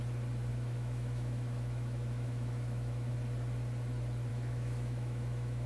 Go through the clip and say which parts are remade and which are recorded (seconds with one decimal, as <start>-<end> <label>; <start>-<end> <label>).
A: 0.0-0.5 recorded; 0.5-3.1 remade; 3.1-4.3 recorded; 4.3-5.7 remade